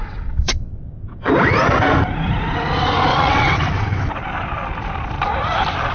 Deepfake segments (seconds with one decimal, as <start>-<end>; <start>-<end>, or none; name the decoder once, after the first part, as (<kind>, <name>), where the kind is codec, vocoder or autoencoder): 0.0-1.3 (vocoder, WaveNeXt); 3.1-4.1